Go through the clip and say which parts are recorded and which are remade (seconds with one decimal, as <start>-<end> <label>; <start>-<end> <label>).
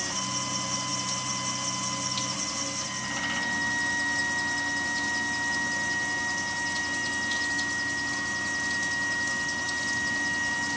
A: 0.0-10.8 recorded